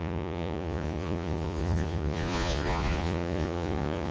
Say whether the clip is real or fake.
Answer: fake